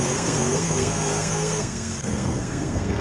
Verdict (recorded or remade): remade